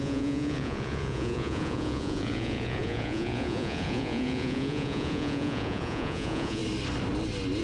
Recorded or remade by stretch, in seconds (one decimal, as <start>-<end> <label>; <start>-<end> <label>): 0.0-6.6 remade; 6.6-7.6 recorded